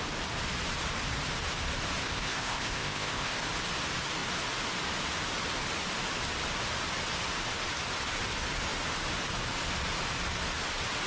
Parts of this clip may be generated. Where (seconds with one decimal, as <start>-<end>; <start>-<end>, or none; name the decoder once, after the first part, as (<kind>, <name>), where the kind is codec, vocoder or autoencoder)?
2.0-3.4 (codec, ZipCodec)